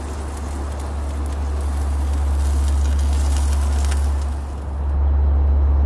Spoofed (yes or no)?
no